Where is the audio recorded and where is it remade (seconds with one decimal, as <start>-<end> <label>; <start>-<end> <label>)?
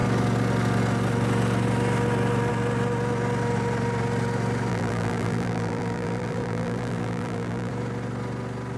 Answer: 0.0-4.7 recorded; 4.7-7.7 remade; 7.7-8.8 recorded